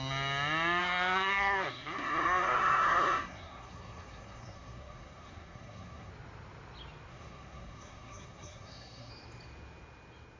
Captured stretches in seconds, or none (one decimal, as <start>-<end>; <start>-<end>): 0.0-0.8; 6.1-7.1; 9.1-10.4